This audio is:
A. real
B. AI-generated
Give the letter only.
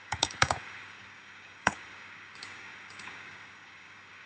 B